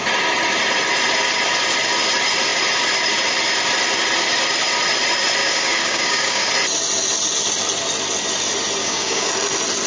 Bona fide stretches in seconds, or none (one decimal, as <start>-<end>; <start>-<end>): 0.0-5.4; 6.5-8.8; 9.3-9.9